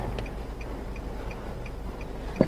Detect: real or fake real